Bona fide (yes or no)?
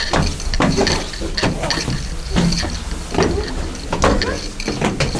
yes